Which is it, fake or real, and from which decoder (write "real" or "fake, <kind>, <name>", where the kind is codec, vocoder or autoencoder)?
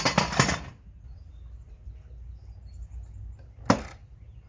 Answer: real